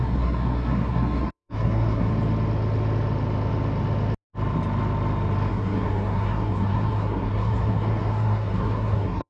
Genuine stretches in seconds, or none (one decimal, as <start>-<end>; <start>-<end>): 2.1-5.5